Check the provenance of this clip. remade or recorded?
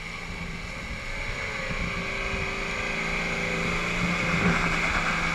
recorded